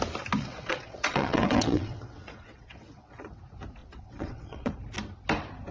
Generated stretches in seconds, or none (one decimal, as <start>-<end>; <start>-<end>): 0.4-3.4; 3.8-4.7